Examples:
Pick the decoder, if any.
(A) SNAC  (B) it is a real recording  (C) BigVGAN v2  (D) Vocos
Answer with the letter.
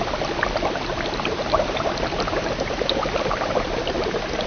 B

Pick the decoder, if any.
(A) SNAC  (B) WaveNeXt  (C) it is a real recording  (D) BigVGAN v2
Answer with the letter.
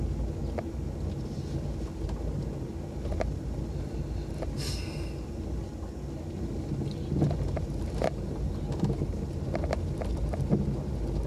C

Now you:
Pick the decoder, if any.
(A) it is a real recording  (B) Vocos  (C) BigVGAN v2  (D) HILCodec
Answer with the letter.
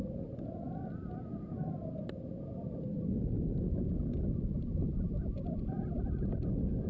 A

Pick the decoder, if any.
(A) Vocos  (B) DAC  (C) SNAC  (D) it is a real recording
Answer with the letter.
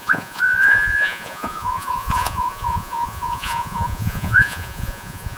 A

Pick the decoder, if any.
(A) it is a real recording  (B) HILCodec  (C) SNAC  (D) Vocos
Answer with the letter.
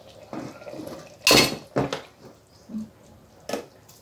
A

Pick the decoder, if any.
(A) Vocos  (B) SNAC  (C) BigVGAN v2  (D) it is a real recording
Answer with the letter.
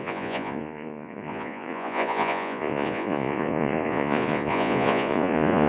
A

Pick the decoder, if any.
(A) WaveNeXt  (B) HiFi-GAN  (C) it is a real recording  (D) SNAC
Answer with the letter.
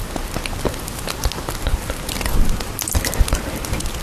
C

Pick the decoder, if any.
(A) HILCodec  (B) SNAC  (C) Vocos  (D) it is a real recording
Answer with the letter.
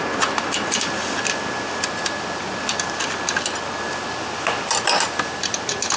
D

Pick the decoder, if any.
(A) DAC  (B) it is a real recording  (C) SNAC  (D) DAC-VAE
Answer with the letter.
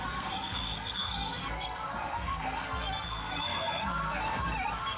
C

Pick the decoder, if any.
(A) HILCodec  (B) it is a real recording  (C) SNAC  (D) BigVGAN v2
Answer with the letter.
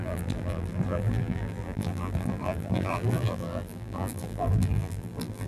D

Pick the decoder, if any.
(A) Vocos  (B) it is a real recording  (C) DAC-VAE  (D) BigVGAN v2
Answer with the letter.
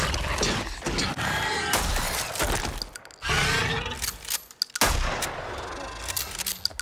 B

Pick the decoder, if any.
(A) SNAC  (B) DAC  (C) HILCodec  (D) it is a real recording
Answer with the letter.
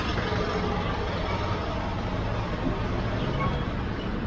D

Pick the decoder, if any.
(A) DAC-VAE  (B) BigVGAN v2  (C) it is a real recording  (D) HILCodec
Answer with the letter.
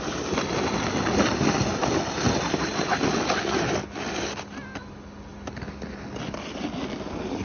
C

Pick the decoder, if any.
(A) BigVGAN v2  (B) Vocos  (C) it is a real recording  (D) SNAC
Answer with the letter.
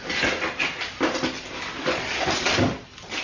C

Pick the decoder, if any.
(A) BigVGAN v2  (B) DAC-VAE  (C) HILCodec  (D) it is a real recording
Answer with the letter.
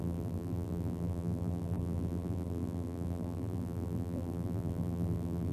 A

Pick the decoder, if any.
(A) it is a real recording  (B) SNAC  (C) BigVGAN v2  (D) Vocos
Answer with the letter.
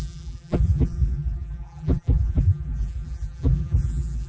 C